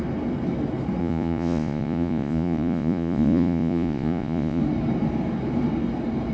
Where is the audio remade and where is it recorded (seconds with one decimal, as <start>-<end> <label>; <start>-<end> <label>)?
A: 0.0-1.0 recorded; 1.0-4.6 remade; 4.6-6.3 recorded